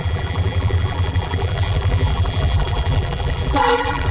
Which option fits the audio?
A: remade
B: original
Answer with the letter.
A